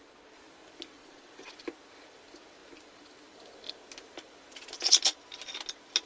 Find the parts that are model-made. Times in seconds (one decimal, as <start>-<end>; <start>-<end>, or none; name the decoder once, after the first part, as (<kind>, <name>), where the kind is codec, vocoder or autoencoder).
1.0-1.5 (vocoder, Vocos)